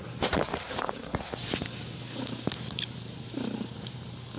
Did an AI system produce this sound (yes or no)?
yes